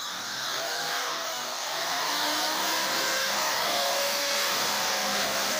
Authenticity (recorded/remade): remade